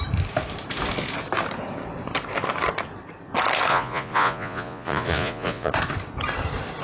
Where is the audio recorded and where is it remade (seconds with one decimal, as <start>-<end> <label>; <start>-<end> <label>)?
0.0-3.7 recorded; 3.7-5.7 remade; 5.7-6.8 recorded